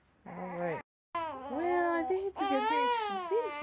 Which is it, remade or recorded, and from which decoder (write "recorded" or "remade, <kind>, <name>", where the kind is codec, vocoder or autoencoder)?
recorded